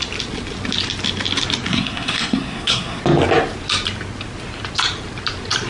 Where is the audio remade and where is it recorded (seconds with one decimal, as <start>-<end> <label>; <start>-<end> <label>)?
0.0-1.7 recorded; 1.7-3.0 remade; 3.0-5.7 recorded